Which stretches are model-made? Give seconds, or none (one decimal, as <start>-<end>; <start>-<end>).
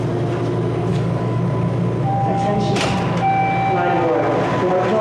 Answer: 0.9-1.4; 2.1-2.7